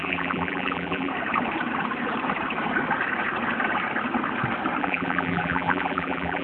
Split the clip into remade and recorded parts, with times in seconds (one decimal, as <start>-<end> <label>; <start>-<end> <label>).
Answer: 0.0-1.1 remade; 1.1-4.8 recorded; 4.8-6.4 remade

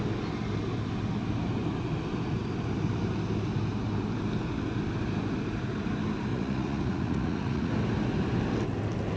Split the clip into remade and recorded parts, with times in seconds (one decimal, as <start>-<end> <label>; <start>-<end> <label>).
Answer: 0.0-6.3 recorded; 6.3-7.7 remade; 7.7-9.2 recorded

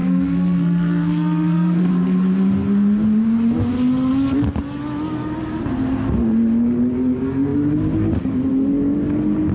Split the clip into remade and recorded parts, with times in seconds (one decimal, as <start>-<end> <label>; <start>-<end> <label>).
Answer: 0.0-1.9 remade; 1.9-9.5 recorded

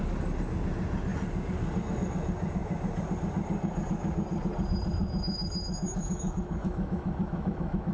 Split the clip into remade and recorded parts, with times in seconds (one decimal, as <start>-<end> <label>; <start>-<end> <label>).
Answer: 0.0-5.0 recorded; 5.0-7.9 remade

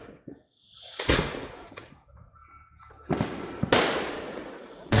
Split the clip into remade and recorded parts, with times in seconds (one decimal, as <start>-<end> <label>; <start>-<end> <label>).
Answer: 0.0-2.3 remade; 2.3-4.1 recorded; 4.1-5.0 remade

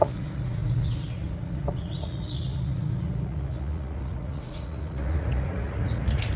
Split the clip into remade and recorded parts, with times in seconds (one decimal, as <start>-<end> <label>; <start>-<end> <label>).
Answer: 0.0-6.4 remade

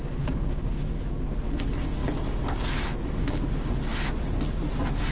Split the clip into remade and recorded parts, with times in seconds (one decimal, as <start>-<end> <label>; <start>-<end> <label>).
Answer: 0.0-1.0 remade; 1.0-5.1 recorded

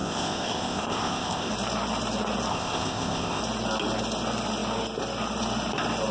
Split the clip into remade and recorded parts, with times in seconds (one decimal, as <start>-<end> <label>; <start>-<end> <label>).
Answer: 0.0-1.5 remade; 1.5-2.5 recorded; 2.5-3.4 remade; 3.4-6.1 recorded